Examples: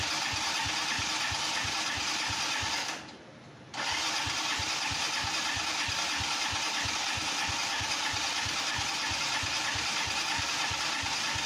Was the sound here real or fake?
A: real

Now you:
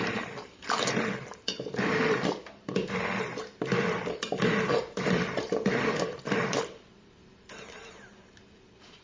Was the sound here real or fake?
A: fake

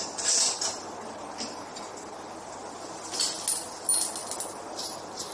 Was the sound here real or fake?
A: real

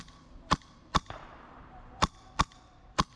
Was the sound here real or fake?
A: fake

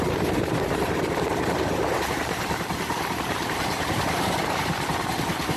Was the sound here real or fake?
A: fake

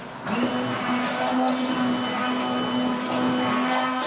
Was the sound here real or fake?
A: real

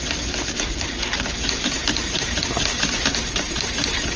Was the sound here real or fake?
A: fake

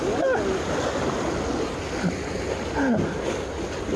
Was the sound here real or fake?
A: real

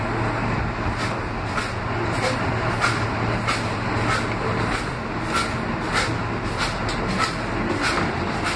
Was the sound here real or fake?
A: real